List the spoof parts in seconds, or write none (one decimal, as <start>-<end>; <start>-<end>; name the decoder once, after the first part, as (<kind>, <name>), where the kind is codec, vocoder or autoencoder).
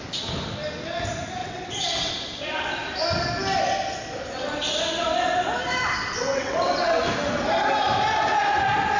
1.4-2.1 (vocoder, WaveNeXt); 6.1-7.0